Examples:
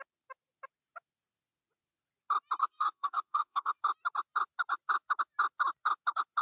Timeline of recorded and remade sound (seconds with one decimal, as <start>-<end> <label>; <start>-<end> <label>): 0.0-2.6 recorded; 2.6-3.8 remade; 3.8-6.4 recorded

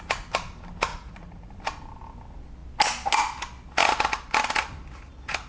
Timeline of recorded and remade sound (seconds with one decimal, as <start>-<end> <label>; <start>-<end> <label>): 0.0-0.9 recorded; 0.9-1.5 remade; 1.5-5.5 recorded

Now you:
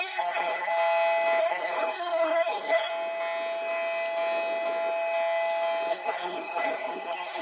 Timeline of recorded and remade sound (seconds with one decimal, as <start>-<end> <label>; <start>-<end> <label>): 0.0-0.7 remade; 0.7-1.4 recorded; 1.4-2.9 remade; 2.9-5.9 recorded; 5.9-7.4 remade

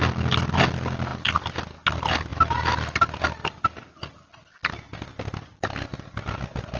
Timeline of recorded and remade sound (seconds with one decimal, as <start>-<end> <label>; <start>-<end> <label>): 0.0-6.8 recorded

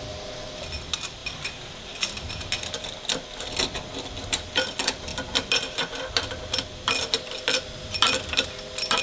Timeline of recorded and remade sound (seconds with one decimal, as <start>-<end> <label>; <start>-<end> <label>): 0.0-9.0 recorded